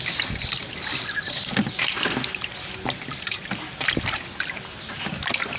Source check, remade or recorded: recorded